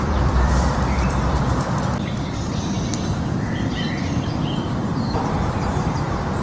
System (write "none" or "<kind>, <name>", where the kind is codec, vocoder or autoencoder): vocoder, BigVGAN v2